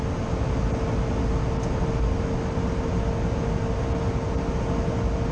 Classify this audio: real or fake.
real